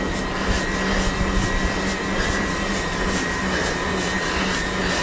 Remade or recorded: recorded